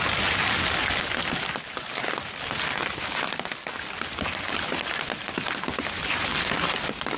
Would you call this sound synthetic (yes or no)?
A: no